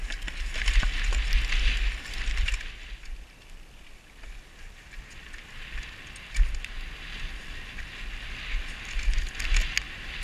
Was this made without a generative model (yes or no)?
yes